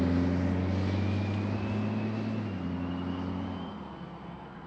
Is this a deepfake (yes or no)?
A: no